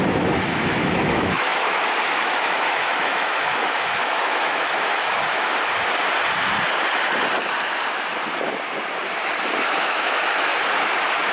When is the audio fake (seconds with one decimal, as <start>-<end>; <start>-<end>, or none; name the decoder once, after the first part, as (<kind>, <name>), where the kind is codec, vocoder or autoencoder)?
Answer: 0.0-5.5 (autoencoder, DAC-VAE); 9.4-10.5